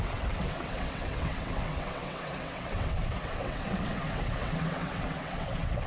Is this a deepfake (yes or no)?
yes